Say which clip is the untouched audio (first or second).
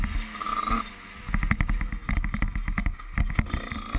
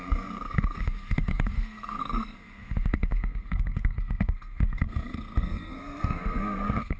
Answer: first